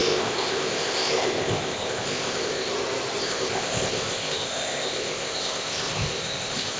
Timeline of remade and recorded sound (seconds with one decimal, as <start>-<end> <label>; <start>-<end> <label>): 0.0-2.7 remade; 2.7-3.2 recorded; 3.2-6.8 remade